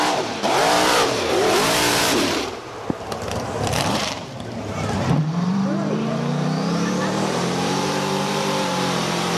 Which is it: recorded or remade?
remade